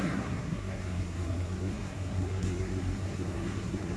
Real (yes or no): no